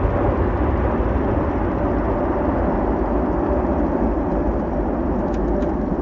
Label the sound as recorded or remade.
recorded